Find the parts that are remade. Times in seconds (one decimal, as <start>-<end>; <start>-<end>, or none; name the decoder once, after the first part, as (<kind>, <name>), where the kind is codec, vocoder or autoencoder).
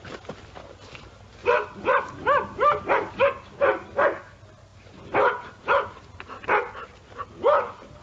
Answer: 1.4-2.8 (vocoder, BigVGAN v2); 4.7-5.9